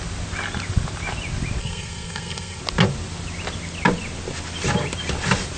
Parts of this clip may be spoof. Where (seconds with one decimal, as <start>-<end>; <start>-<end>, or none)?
1.6-2.6